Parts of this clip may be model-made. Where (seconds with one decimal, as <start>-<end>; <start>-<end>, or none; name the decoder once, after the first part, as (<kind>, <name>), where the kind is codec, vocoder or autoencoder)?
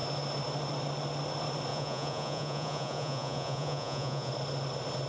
1.7-4.3 (vocoder, Vocos)